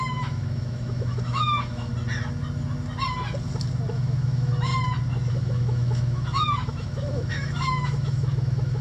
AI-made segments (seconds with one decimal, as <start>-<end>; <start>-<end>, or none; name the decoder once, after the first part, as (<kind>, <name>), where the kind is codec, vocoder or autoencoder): 0.0-1.9 (autoencoder, DAC-VAE); 3.9-4.7; 5.3-8.8